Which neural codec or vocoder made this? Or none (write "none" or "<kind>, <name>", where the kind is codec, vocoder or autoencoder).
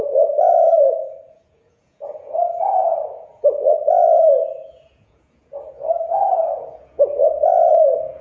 vocoder, Vocos